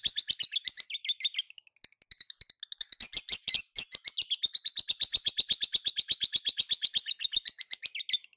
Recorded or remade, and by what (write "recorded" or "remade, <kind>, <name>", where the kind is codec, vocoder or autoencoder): recorded